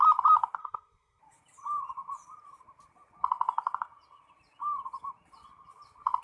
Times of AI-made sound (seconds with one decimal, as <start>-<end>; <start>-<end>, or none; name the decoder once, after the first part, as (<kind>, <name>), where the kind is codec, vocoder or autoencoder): 0.6-1.2 (codec, SNAC)